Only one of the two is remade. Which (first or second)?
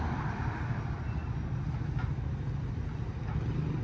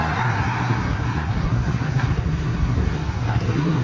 second